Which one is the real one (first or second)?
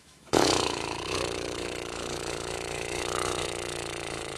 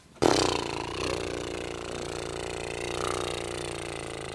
second